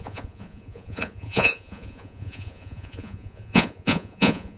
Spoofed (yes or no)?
yes